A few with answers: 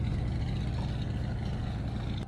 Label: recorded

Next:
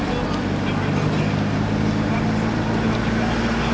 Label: recorded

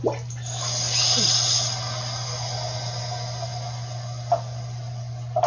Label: recorded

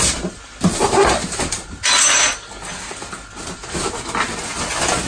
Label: recorded